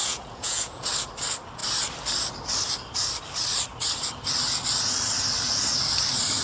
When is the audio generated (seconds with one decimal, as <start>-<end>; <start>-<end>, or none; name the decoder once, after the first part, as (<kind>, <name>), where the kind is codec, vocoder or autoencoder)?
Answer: 0.0-0.8 (vocoder, Vocos)